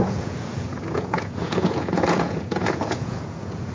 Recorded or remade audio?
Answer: remade